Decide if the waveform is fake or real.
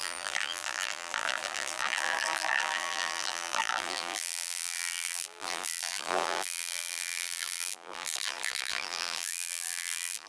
fake